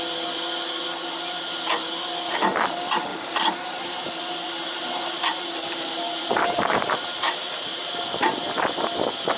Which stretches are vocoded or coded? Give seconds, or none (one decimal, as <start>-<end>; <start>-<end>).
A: 3.1-7.9

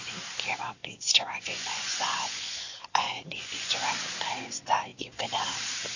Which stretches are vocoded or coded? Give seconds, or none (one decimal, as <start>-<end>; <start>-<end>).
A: 0.8-4.1

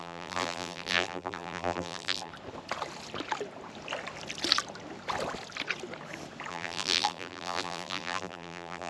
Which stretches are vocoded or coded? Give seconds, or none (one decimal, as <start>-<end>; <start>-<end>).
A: 0.0-2.3; 6.5-8.9

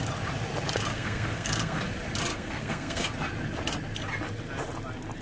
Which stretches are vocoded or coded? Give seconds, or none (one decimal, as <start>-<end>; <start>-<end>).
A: 0.9-1.8; 2.3-3.1

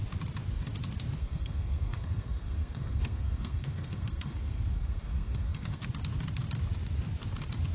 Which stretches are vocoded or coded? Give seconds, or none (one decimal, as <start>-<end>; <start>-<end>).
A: 1.2-5.8

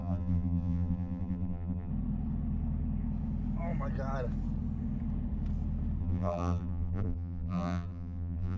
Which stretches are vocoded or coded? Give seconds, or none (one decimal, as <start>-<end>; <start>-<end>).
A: 0.0-1.9; 6.0-8.6